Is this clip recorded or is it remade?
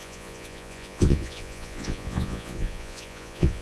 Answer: remade